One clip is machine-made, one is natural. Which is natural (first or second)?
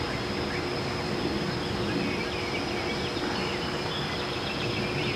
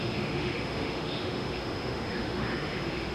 first